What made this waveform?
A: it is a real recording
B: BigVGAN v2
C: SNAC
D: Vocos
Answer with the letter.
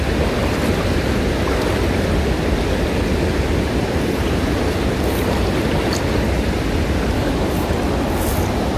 A